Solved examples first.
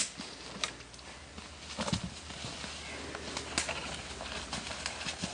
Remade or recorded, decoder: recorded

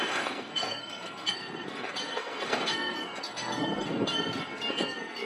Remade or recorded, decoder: remade, codec, SNAC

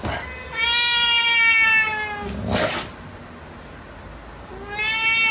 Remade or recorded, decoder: recorded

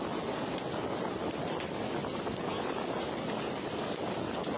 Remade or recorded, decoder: recorded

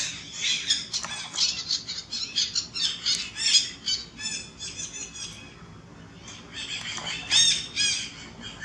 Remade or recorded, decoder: recorded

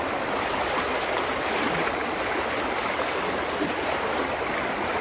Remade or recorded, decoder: recorded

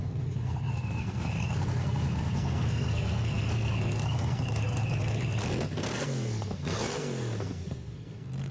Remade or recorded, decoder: remade, codec, SNAC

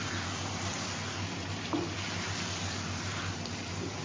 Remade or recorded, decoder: recorded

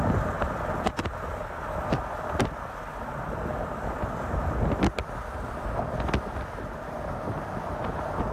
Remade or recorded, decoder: recorded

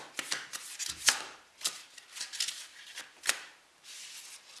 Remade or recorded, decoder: recorded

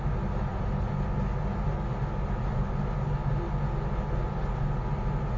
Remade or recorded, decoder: recorded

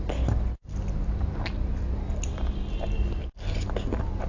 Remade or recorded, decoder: recorded